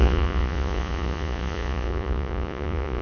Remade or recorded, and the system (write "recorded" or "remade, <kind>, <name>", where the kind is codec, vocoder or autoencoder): remade, vocoder, Vocos